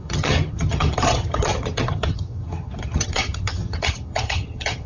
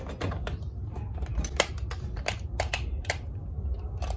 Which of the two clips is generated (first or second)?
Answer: first